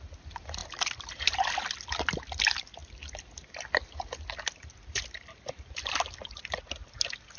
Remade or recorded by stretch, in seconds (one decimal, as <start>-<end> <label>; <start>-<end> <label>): 0.0-7.4 recorded